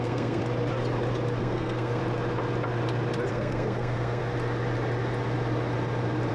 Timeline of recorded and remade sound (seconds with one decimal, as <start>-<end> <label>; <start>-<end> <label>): 0.0-0.4 remade; 0.4-1.4 recorded; 1.4-2.0 remade; 2.0-3.3 recorded; 3.3-4.2 remade; 4.2-6.3 recorded